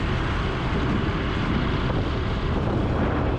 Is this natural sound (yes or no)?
yes